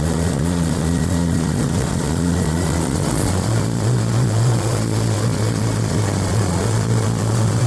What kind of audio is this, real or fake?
fake